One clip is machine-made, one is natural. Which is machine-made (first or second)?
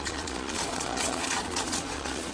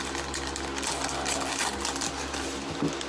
first